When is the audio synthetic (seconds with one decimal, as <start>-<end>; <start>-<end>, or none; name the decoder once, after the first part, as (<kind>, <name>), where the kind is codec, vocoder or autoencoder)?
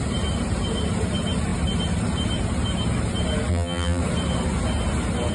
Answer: 3.5-4.0 (vocoder, BigVGAN v2)